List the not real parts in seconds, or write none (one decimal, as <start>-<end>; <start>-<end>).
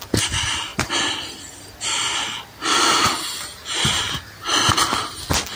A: 0.7-4.1